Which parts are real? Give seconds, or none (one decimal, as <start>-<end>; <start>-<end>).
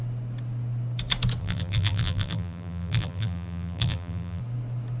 0.0-1.4; 4.4-5.0